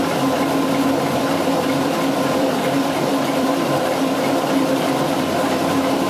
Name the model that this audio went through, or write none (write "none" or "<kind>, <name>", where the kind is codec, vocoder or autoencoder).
vocoder, BigVGAN v2